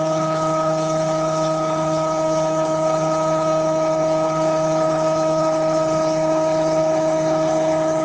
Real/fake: fake